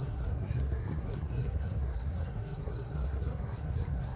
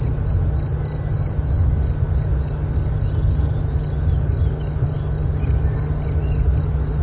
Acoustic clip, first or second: second